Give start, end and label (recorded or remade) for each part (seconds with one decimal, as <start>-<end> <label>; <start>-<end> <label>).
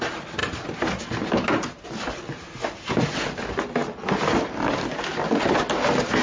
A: 0.0-6.2 recorded